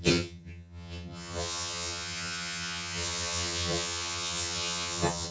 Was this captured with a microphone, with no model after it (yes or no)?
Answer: no